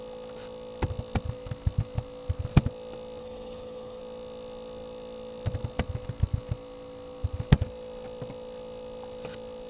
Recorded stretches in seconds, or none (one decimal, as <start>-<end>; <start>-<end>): 0.0-3.2; 4.0-9.7